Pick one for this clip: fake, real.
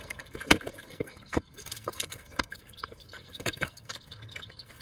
fake